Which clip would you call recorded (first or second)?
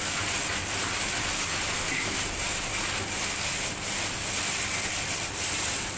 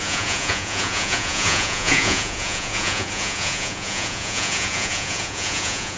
first